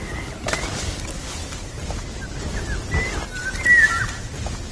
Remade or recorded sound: recorded